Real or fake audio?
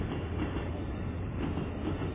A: real